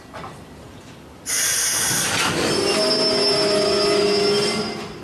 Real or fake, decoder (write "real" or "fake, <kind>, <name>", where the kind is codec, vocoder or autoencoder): real